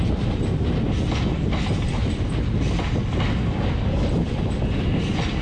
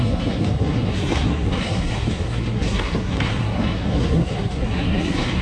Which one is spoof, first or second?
second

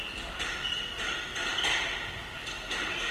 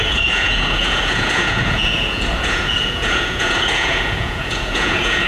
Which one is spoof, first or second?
second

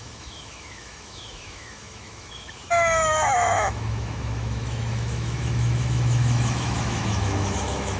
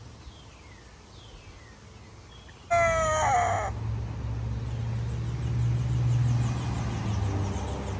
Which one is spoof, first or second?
first